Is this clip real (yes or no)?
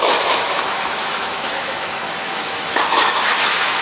no